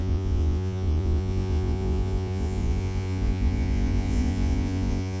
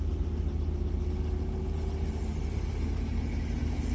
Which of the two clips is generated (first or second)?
first